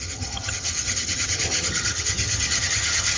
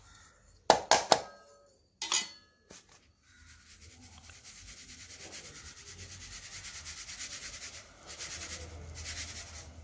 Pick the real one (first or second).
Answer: second